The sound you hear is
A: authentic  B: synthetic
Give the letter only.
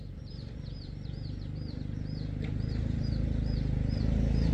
B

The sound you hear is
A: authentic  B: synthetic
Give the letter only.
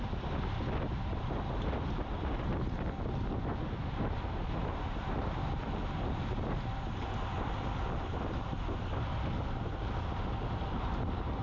A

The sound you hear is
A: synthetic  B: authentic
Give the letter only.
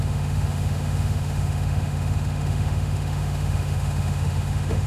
A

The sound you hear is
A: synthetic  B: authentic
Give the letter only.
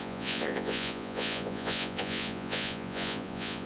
A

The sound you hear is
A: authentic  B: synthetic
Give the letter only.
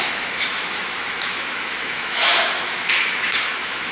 B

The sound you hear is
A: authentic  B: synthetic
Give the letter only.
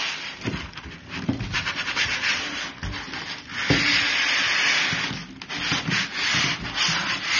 A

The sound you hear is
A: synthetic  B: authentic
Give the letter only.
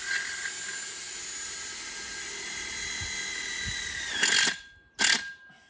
B